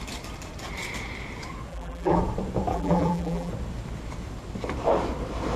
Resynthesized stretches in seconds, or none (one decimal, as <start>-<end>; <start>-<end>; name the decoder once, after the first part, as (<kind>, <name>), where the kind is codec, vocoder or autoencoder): 1.7-2.2 (vocoder, BigVGAN v2); 2.7-3.5